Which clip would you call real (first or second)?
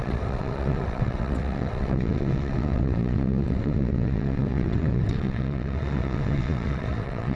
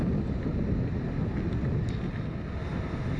second